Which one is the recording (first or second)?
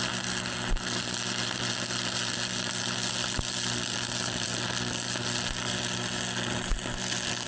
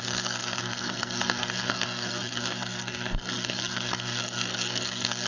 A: first